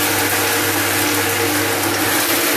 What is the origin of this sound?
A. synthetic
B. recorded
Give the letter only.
B